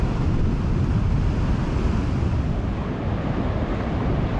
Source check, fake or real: real